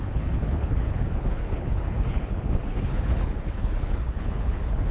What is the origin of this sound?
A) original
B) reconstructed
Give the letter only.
B